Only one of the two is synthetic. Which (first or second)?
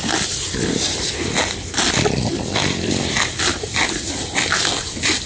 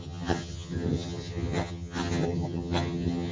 second